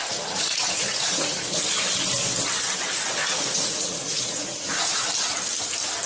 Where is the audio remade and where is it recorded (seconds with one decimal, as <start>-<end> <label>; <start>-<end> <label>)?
0.0-1.6 remade; 1.6-3.2 recorded; 3.2-5.1 remade; 5.1-6.1 recorded